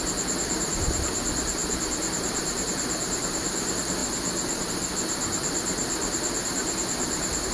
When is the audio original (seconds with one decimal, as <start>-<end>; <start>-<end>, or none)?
0.0-1.6; 2.7-7.5